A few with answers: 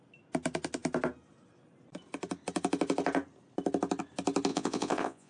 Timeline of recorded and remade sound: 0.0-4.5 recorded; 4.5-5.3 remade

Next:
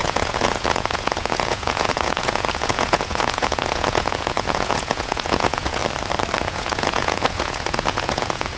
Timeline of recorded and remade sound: 0.0-5.8 remade; 5.8-6.4 recorded; 6.4-8.6 remade

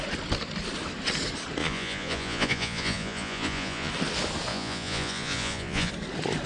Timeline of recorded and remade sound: 0.0-1.6 recorded; 1.6-3.9 remade; 3.9-4.5 recorded; 4.5-5.9 remade; 5.9-6.5 recorded

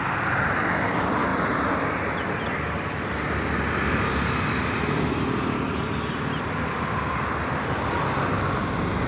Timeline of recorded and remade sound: 0.0-9.1 recorded